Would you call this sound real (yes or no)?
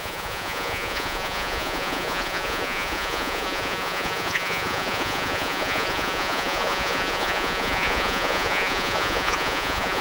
no